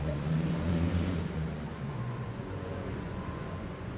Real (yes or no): no